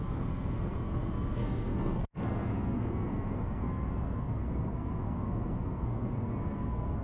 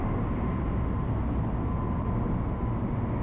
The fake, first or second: first